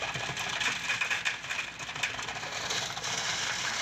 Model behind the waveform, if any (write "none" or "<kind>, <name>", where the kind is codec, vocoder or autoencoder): vocoder, BigVGAN v2